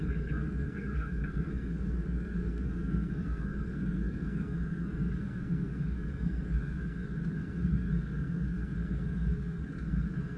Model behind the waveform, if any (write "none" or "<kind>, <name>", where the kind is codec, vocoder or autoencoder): codec, SNAC